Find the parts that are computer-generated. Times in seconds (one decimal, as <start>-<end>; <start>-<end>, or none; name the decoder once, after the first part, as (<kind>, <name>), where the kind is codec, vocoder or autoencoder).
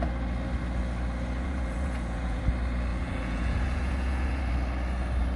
1.4-2.4 (vocoder, Vocos); 2.9-4.4